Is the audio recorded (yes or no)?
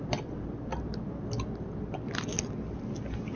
yes